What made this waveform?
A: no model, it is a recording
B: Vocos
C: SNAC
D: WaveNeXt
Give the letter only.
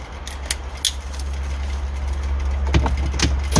A